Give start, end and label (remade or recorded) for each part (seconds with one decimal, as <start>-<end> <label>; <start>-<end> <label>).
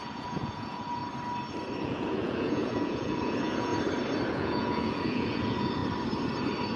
0.0-1.0 remade; 1.0-1.8 recorded; 1.8-3.7 remade; 3.7-4.3 recorded; 4.3-5.8 remade; 5.8-6.8 recorded